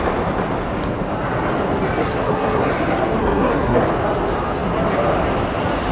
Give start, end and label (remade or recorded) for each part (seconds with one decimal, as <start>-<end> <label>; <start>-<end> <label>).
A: 0.0-2.0 recorded; 2.0-2.7 remade; 2.7-3.2 recorded; 3.2-3.8 remade; 3.8-5.9 recorded